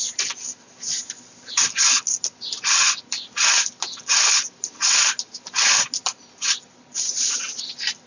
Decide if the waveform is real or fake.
real